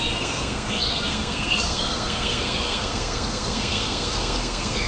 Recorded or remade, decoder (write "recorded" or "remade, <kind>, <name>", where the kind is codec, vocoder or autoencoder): remade, codec, SNAC